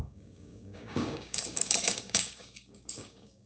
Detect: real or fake fake